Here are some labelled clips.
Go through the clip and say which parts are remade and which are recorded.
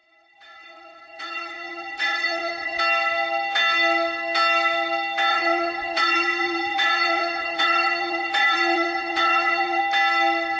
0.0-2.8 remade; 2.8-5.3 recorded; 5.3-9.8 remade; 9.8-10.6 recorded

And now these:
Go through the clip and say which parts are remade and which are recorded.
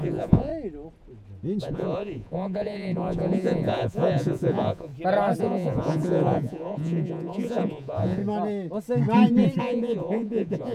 0.0-0.5 remade; 0.5-1.6 recorded; 1.6-4.9 remade; 4.9-5.4 recorded; 5.4-8.2 remade; 8.2-9.6 recorded; 9.6-10.7 remade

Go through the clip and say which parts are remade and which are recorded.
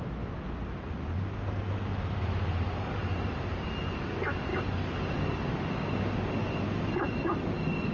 0.0-7.9 recorded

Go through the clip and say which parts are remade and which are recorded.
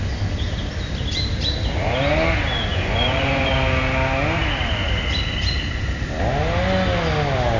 0.0-2.7 recorded; 2.7-3.5 remade; 3.5-7.6 recorded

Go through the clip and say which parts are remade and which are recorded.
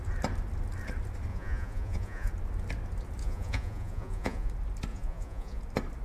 0.0-1.3 recorded; 1.3-2.3 remade; 2.3-3.2 recorded; 3.2-4.5 remade; 4.5-4.9 recorded; 4.9-5.6 remade; 5.6-6.0 recorded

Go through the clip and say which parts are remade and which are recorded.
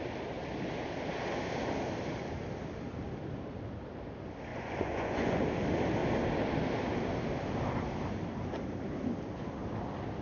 0.0-4.5 recorded; 4.5-5.4 remade; 5.4-10.2 recorded